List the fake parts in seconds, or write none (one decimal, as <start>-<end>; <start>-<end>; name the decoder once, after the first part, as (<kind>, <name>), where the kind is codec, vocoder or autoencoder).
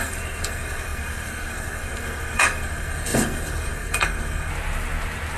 0.0-4.5 (codec, SNAC)